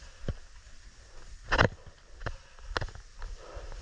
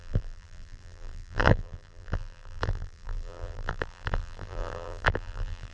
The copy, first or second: second